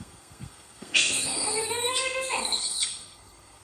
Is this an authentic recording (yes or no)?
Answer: no